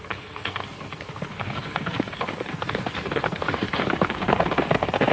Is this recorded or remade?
remade